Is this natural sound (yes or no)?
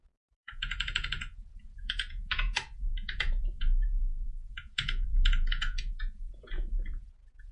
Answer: no